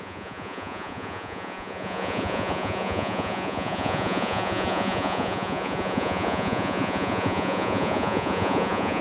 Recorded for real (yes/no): no